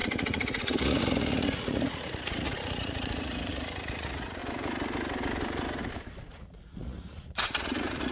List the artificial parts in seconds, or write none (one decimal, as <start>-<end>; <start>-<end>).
0.0-4.4; 6.3-8.1